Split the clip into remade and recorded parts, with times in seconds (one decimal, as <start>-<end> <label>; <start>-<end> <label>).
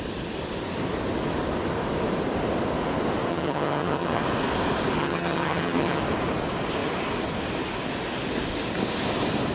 0.0-3.3 recorded; 3.3-4.2 remade; 4.2-5.0 recorded; 5.0-6.0 remade; 6.0-9.5 recorded